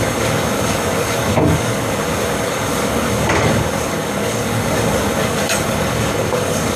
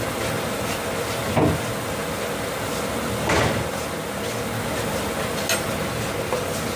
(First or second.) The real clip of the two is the second